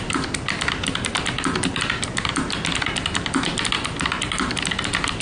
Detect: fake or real real